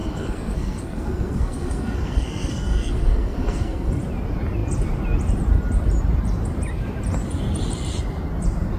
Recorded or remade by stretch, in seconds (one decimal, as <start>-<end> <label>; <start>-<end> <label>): 0.0-3.9 remade; 3.9-8.8 recorded